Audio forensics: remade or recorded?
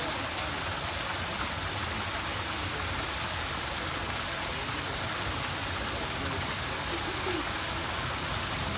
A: recorded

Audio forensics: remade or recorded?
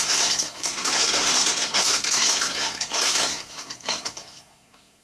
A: remade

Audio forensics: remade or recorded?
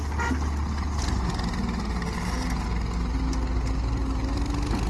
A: recorded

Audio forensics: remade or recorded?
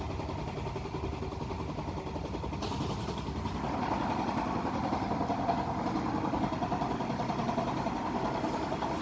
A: recorded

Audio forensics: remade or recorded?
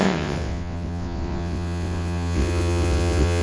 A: remade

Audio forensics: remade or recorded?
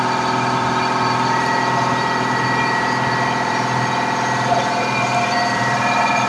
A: remade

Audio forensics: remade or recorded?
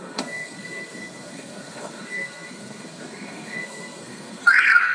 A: remade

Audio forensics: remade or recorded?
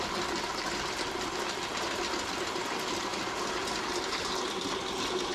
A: recorded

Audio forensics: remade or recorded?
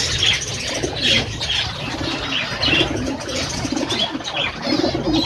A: remade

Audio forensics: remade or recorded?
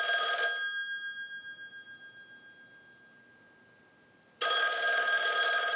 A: recorded